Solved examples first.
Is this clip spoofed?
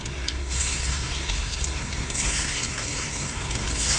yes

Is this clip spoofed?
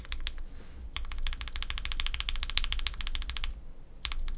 no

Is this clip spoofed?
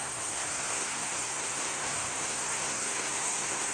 yes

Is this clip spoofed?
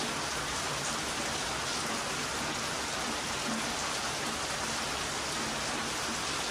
no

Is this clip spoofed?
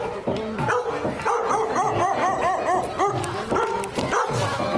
no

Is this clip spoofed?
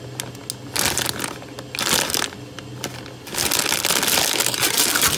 no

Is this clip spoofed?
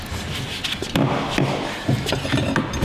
no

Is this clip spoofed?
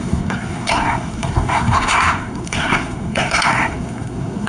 yes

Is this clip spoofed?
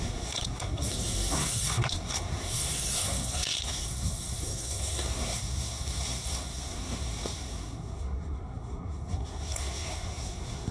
yes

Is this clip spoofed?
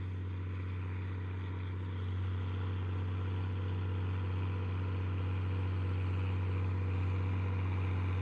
no